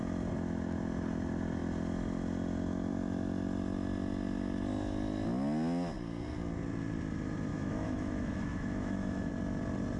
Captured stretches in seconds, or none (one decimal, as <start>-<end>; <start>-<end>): 0.0-7.5; 9.3-10.0